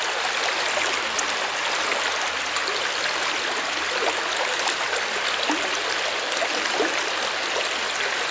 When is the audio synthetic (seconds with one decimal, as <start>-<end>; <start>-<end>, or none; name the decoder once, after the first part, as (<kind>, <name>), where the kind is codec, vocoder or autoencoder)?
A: none